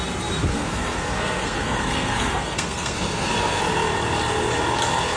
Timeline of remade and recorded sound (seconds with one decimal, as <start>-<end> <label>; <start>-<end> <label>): 0.0-0.5 recorded; 0.5-3.6 remade; 3.6-5.2 recorded